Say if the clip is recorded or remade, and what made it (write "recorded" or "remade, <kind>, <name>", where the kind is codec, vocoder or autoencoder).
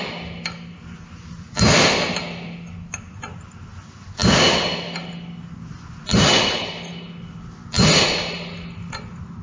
recorded